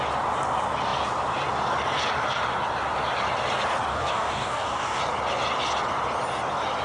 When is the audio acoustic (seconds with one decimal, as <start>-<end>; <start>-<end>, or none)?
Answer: 0.0-3.9; 5.0-6.8